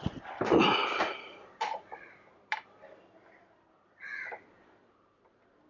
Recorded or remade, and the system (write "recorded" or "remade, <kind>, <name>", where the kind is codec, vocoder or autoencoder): remade, vocoder, BigVGAN v2